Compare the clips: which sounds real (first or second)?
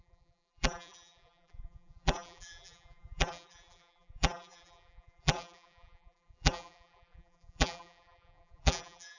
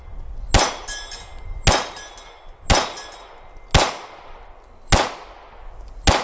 second